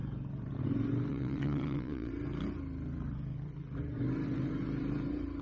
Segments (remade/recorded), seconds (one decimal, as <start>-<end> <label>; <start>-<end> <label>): 0.0-1.1 recorded; 1.1-2.1 remade; 2.1-5.4 recorded